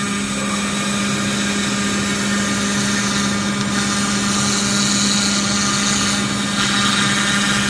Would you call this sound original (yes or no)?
yes